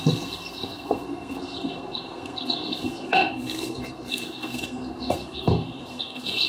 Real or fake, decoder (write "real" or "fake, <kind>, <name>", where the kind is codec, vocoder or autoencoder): fake, codec, SNAC